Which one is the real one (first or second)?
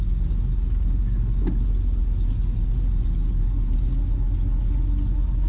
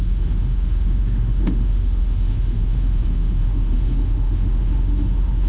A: first